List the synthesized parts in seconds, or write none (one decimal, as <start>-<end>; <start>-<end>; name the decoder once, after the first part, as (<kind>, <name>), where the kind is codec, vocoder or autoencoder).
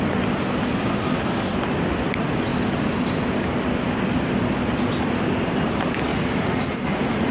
6.1-7.3 (vocoder, Vocos)